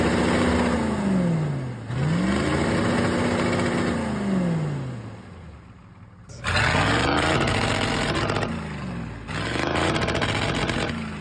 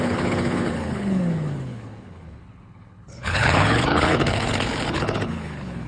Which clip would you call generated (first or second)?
second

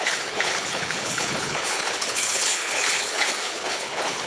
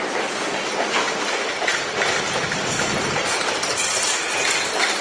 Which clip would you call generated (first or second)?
first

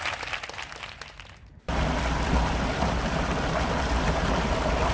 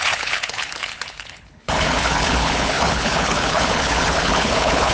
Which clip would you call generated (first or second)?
second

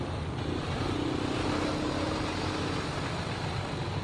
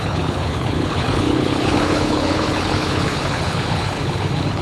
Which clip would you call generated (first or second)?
second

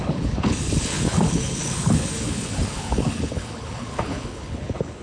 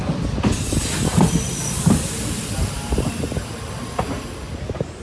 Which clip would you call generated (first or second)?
first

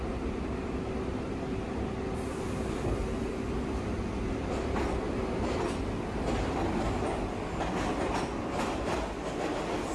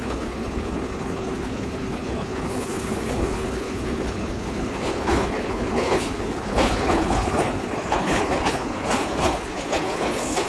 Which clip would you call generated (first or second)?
second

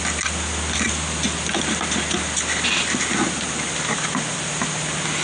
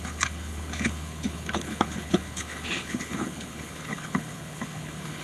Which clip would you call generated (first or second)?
second